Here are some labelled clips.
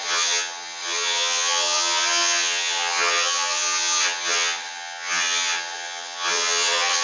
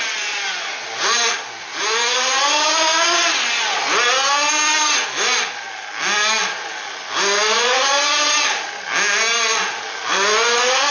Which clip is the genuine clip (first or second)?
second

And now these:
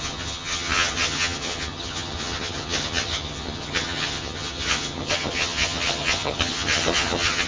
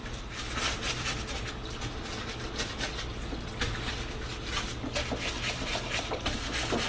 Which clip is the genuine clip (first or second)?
second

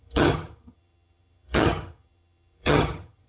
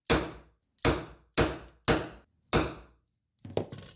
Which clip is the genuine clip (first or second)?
second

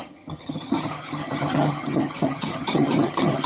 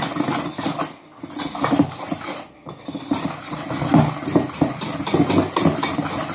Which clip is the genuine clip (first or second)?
second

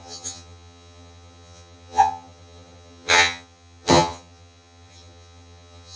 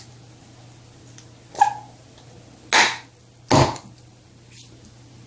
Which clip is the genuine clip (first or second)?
second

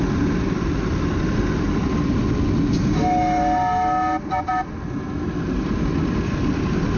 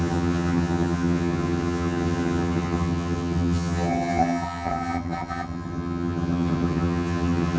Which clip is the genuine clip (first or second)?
first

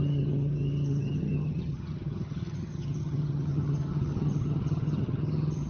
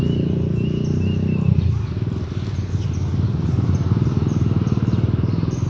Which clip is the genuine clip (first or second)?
second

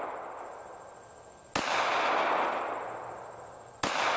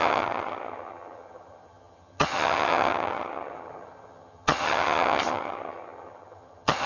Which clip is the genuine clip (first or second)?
first